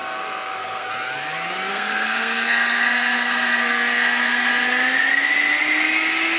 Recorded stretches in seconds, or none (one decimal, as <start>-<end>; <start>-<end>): 0.9-1.7; 4.5-6.4